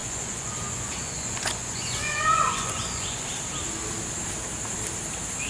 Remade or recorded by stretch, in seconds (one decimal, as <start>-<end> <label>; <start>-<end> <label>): 0.0-3.3 remade; 3.3-5.5 recorded